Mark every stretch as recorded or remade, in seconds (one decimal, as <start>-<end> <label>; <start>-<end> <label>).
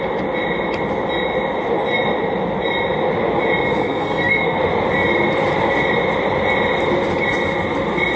0.0-3.8 recorded; 3.8-4.6 remade; 4.6-8.2 recorded